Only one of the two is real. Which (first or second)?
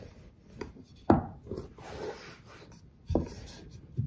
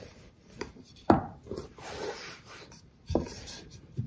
first